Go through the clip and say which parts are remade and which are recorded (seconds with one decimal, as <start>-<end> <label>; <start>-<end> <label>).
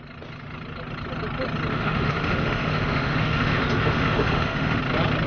0.0-1.7 recorded; 1.7-4.8 remade; 4.8-5.3 recorded